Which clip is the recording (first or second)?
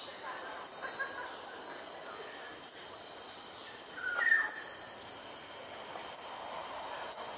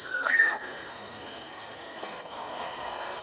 first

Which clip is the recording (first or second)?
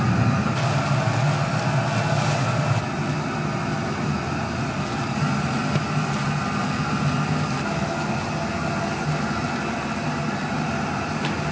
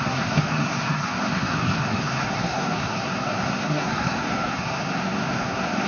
first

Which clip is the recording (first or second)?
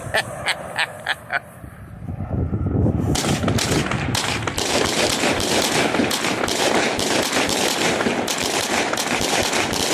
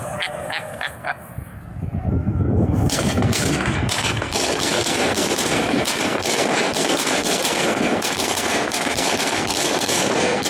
first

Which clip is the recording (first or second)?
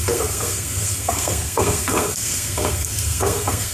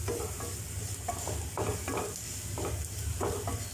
second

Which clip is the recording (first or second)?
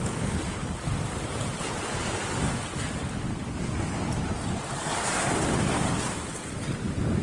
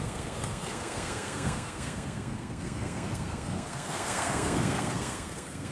first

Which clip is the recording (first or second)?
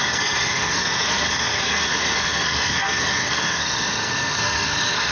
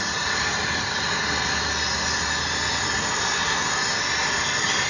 second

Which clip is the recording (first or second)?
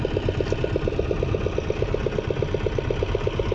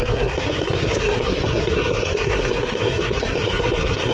first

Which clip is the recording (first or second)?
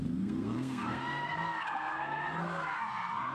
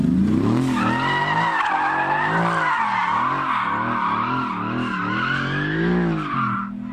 second